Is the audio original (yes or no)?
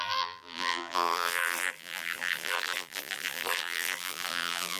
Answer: no